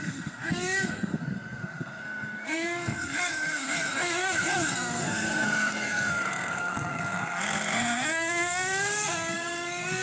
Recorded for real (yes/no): no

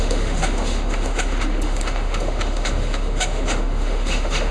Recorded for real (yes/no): no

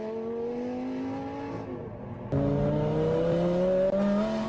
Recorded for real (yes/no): yes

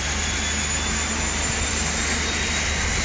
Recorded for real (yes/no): yes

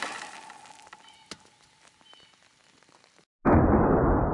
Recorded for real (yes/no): yes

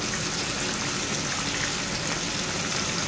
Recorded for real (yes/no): yes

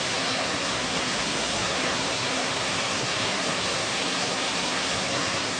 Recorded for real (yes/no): no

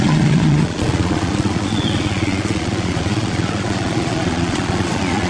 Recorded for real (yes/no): no